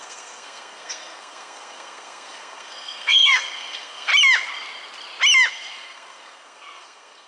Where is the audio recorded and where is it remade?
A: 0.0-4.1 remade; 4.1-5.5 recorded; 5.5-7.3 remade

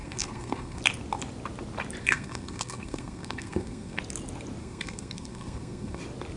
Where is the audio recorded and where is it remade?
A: 0.0-0.8 remade; 0.8-2.0 recorded; 2.0-4.0 remade; 4.0-4.6 recorded; 4.6-6.0 remade; 6.0-6.4 recorded

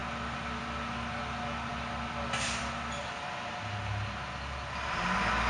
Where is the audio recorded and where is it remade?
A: 0.0-5.5 recorded

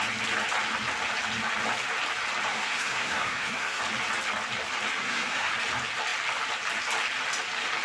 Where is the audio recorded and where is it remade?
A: 0.0-2.5 recorded; 2.5-3.8 remade; 3.8-5.0 recorded; 5.0-5.5 remade; 5.5-7.8 recorded